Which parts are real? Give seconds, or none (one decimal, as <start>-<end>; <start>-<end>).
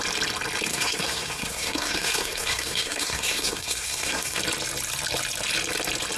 0.0-0.7; 4.4-6.2